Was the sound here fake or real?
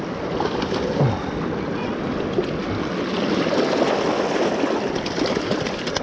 real